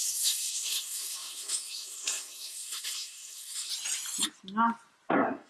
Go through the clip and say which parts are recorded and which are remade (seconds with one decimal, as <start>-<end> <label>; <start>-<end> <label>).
0.0-3.7 remade; 3.7-5.1 recorded; 5.1-5.5 remade